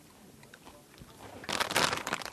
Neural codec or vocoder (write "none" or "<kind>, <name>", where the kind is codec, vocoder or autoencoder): none